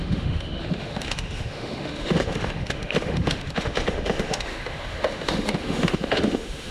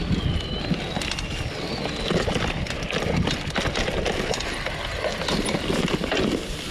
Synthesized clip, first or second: first